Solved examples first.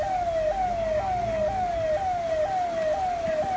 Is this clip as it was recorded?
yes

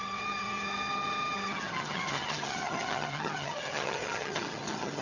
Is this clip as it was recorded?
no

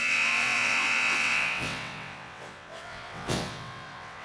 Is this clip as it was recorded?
no